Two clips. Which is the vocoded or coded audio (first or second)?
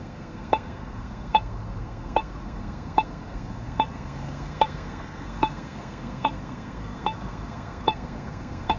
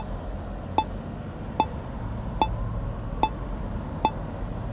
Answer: first